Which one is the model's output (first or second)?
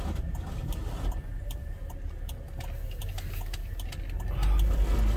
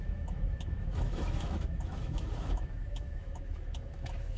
second